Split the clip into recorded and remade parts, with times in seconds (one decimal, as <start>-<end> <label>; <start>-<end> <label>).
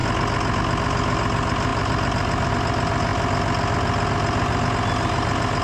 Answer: 0.0-1.7 recorded; 1.7-2.5 remade; 2.5-5.6 recorded